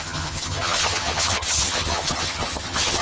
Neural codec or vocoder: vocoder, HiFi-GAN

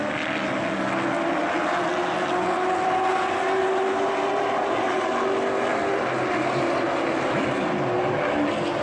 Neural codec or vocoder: none